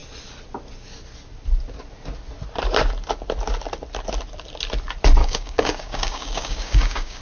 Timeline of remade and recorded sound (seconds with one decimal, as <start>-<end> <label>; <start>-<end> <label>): 0.0-5.2 recorded; 5.2-7.2 remade